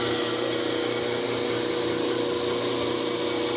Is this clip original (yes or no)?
yes